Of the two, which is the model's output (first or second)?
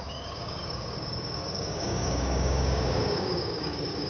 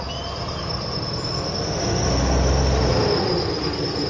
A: first